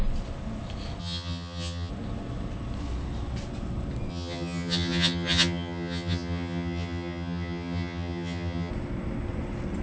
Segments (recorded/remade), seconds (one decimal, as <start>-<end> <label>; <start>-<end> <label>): 0.0-1.0 recorded; 1.0-1.9 remade; 1.9-4.1 recorded; 4.1-8.7 remade; 8.7-9.8 recorded